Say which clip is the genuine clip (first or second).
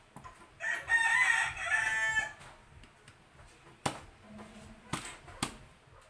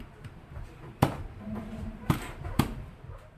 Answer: first